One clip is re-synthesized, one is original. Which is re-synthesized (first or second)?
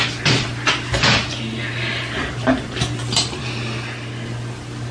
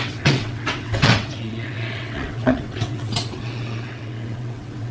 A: second